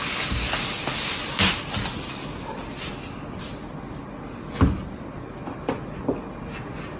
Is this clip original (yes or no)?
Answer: yes